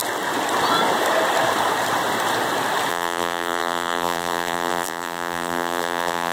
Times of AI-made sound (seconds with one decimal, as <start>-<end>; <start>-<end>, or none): 2.9-6.3